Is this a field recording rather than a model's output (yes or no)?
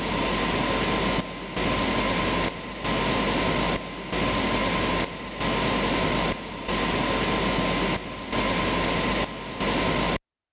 yes